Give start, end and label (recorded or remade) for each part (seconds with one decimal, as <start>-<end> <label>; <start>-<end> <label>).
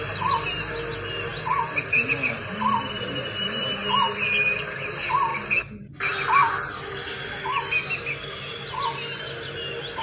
0.0-10.0 recorded